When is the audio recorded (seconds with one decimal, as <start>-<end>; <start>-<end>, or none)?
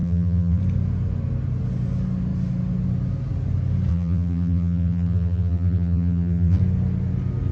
0.6-3.9; 6.6-7.5